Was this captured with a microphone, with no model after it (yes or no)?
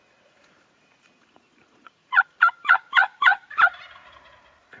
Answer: no